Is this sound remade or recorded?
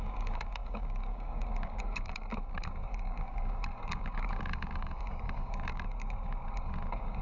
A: remade